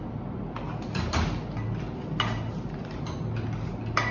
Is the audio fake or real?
real